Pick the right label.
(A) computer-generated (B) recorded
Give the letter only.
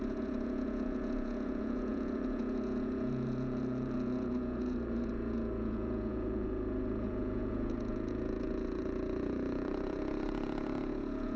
A